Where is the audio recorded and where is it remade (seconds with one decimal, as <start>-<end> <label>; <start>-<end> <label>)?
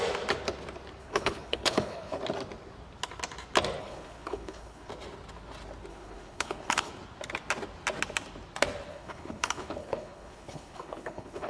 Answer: 0.0-1.0 recorded; 1.0-2.2 remade; 2.2-3.8 recorded; 3.8-4.9 remade; 4.9-5.9 recorded; 5.9-6.9 remade; 6.9-8.9 recorded; 8.9-11.5 remade